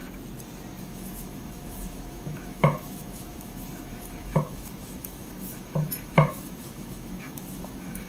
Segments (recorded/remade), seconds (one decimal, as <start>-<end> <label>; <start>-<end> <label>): 0.0-0.8 recorded; 0.8-8.1 remade